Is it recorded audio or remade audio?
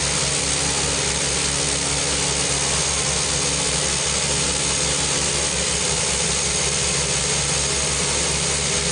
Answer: recorded